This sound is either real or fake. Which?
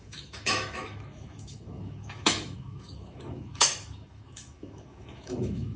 fake